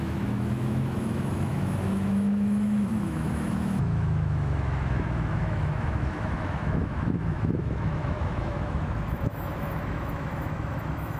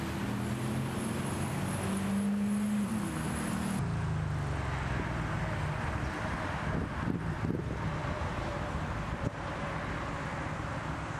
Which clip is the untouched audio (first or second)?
second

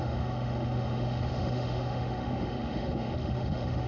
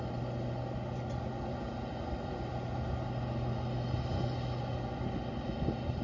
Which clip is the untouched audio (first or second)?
second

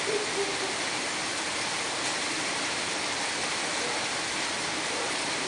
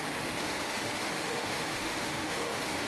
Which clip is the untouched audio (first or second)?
first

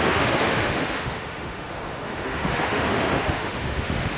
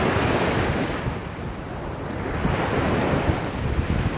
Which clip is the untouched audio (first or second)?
second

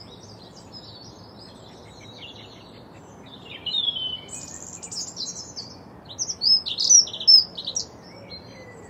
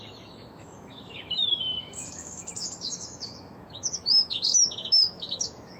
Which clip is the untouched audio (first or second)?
first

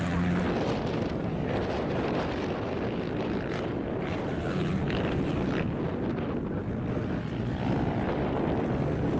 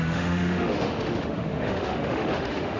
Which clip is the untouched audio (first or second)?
first